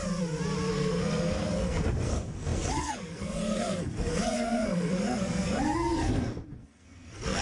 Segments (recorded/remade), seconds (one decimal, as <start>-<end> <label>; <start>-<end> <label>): 0.0-0.7 recorded; 0.7-7.4 remade